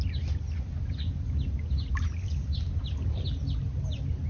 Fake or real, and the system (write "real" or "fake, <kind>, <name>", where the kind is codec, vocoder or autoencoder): real